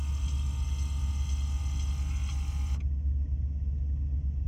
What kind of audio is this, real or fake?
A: real